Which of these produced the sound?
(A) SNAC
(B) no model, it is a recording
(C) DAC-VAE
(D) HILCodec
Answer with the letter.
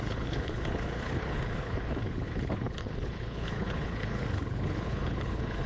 D